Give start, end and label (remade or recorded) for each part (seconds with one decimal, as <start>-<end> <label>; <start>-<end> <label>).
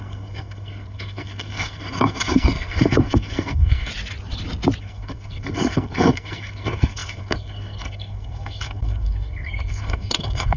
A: 0.0-3.9 remade; 3.9-4.8 recorded; 4.8-10.6 remade